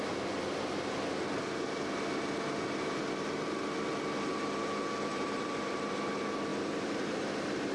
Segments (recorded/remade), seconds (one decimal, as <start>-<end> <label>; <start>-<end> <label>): 0.0-5.1 recorded; 5.1-5.7 remade; 5.7-6.5 recorded; 6.5-7.7 remade

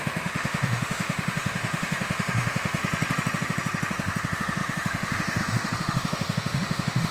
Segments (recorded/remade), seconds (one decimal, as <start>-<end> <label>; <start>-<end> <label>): 0.0-2.8 remade; 2.8-3.9 recorded; 3.9-7.1 remade